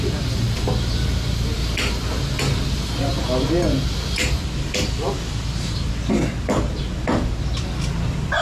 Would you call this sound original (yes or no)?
yes